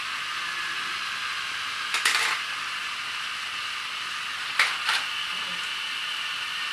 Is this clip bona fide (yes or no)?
yes